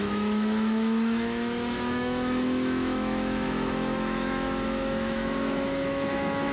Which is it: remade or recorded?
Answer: remade